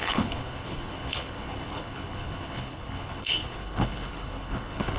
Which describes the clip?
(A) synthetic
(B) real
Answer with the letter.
A